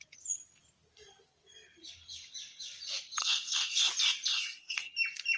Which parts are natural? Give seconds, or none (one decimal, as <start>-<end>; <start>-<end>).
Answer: 0.0-3.2; 3.9-4.3; 4.9-5.4